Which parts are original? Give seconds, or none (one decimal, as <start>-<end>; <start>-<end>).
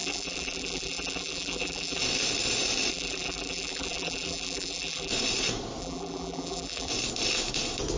2.0-2.9; 5.1-5.8; 6.9-8.0